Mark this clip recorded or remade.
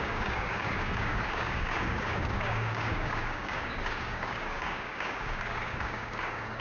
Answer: remade